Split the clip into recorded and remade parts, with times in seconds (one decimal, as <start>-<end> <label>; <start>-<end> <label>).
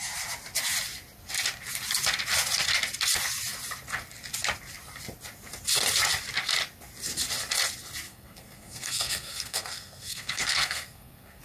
0.0-8.1 recorded; 8.1-11.4 remade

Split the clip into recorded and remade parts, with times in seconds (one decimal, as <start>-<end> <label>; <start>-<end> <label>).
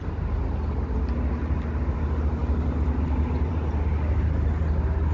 0.0-5.1 recorded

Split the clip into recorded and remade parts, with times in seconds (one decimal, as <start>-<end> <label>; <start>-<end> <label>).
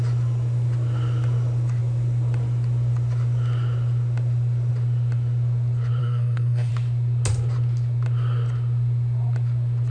0.0-6.0 recorded; 6.0-6.7 remade; 6.7-9.9 recorded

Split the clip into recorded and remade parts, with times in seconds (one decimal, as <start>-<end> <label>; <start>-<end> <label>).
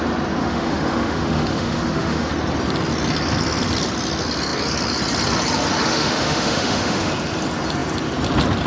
0.0-0.4 recorded; 0.4-2.3 remade; 2.3-5.9 recorded; 5.9-7.1 remade; 7.1-8.7 recorded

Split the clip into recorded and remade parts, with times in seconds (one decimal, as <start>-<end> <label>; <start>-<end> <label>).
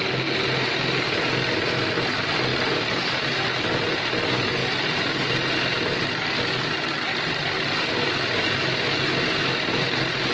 0.0-2.5 recorded; 2.5-3.8 remade; 3.8-10.3 recorded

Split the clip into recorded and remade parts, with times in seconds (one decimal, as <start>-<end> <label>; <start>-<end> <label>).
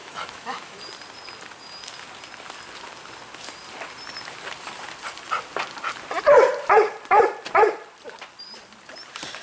0.0-0.8 remade; 0.8-9.4 recorded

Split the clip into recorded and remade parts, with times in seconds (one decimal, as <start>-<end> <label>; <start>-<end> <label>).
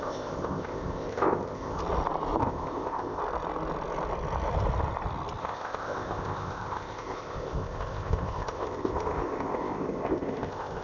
0.0-1.8 remade; 1.8-2.4 recorded; 2.4-3.2 remade; 3.2-5.4 recorded; 5.4-10.8 remade